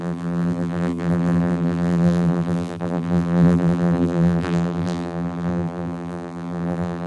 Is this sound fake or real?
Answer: fake